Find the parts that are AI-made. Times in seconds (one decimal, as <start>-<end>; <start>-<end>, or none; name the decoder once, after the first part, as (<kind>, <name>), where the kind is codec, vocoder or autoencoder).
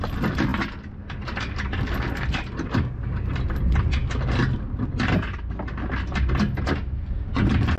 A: none